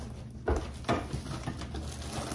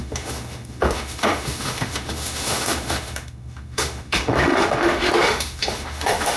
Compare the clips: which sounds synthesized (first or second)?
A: second